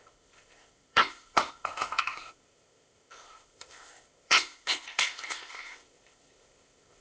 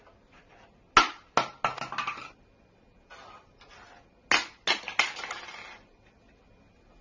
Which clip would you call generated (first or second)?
first